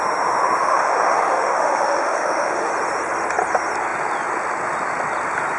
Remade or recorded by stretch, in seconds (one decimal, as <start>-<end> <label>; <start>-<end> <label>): 0.0-0.6 recorded; 0.6-2.7 remade; 2.7-5.6 recorded